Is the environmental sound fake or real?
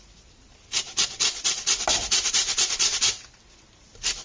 real